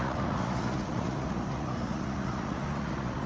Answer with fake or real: fake